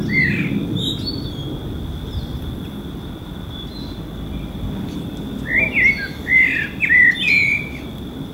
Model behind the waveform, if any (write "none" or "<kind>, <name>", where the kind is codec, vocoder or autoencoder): none